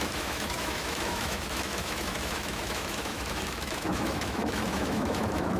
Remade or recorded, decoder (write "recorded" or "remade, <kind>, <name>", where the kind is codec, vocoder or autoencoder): remade, autoencoder, DAC-VAE